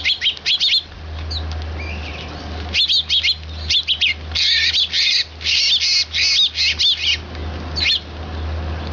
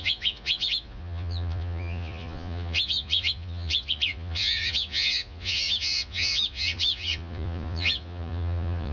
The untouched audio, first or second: first